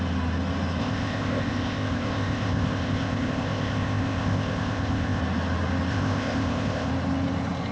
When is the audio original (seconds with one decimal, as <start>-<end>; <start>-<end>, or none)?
0.0-0.8; 5.2-5.9; 6.9-7.7